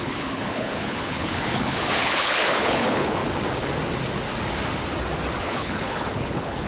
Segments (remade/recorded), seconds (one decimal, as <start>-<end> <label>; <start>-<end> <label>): 0.0-3.2 remade; 3.2-5.4 recorded; 5.4-6.7 remade